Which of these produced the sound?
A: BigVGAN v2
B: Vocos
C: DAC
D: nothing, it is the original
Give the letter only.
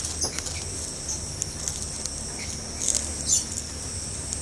D